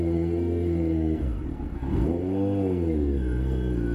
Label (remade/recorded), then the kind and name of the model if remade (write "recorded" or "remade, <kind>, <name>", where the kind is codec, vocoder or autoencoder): remade, codec, SNAC